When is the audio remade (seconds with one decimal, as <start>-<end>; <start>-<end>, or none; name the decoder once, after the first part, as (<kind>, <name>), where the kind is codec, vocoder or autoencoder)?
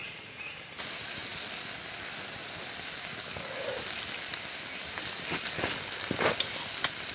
0.0-0.5 (vocoder, Vocos)